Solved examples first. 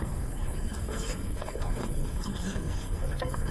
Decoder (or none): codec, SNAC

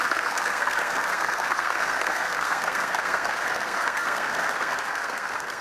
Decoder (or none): codec, SNAC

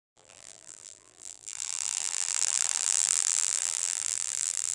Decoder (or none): vocoder, BigVGAN v2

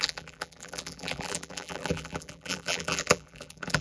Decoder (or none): vocoder, BigVGAN v2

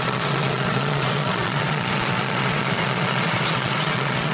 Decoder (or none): vocoder, Vocos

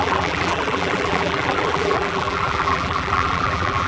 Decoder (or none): vocoder, BigVGAN v2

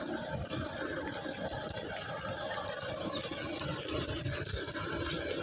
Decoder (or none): none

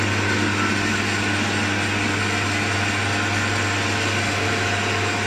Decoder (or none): none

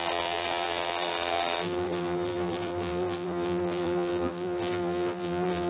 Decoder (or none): vocoder, BigVGAN v2